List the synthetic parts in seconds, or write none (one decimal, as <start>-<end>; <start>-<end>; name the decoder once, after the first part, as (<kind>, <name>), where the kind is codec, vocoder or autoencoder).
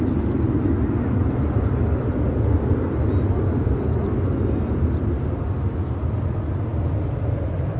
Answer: none